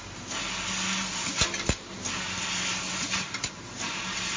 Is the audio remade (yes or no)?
no